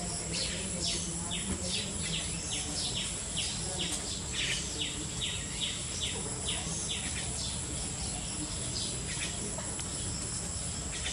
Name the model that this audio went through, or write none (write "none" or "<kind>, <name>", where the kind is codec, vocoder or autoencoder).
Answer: none